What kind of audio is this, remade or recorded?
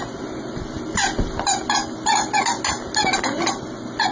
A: recorded